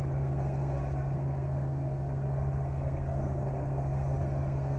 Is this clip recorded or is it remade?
remade